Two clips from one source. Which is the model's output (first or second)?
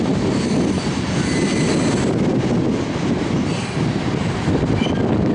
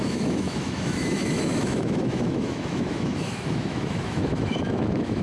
second